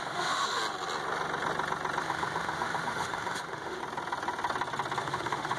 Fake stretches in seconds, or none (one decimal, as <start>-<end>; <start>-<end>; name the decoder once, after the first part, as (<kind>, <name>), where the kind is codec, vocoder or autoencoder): 0.0-0.6 (autoencoder, DAC-VAE); 2.0-3.8; 5.0-5.6